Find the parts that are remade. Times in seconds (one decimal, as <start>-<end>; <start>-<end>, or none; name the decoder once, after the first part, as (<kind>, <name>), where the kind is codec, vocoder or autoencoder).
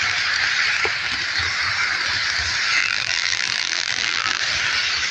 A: 2.8-4.4 (vocoder, BigVGAN v2)